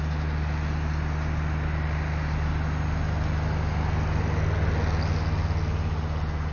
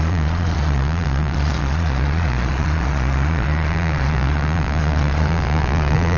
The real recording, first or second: first